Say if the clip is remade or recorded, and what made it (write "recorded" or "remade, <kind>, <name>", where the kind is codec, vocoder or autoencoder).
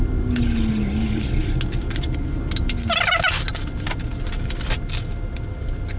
recorded